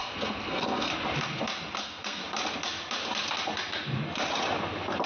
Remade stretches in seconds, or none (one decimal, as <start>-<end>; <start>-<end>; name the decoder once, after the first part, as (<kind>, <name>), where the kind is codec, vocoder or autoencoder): 0.0-0.9 (codec, SNAC); 1.8-2.2

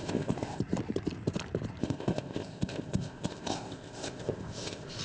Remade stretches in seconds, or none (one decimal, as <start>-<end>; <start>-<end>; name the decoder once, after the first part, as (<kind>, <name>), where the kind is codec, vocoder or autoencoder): 0.0-0.6 (codec, ZipCodec); 1.8-5.0